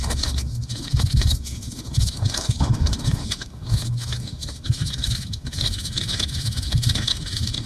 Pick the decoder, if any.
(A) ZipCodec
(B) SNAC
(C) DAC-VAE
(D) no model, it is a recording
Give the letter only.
C